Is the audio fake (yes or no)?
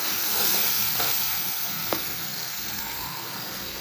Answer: yes